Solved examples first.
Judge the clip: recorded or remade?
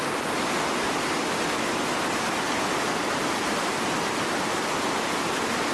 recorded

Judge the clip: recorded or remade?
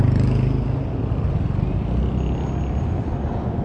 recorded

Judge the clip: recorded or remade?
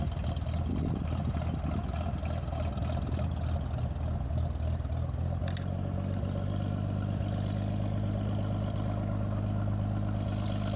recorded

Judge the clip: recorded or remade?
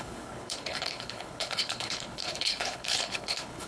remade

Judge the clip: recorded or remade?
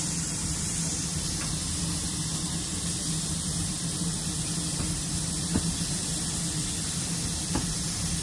recorded